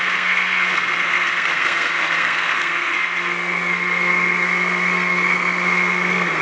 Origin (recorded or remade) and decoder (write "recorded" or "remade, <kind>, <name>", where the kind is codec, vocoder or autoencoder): remade, codec, SNAC